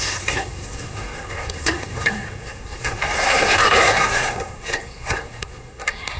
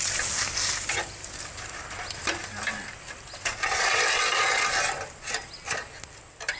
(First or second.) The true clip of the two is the second